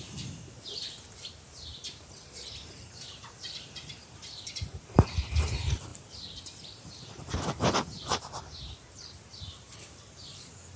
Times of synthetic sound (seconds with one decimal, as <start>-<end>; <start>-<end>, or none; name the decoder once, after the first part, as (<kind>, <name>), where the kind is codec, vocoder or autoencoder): 0.0-10.8 (vocoder, BigVGAN v2)

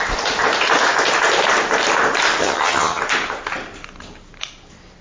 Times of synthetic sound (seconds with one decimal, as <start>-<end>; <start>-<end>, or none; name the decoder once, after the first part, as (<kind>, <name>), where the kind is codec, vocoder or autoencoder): 2.4-3.0 (vocoder, HiFi-GAN)

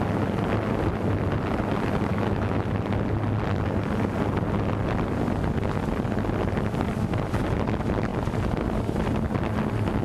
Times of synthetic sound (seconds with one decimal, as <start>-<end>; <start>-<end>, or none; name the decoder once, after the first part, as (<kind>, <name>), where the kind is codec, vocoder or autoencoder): 2.1-2.7 (autoencoder, DAC-VAE)